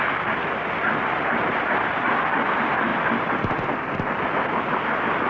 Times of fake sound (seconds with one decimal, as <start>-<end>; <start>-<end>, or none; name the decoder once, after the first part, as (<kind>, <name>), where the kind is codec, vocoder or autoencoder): 2.9-4.3 (vocoder, BigVGAN v2)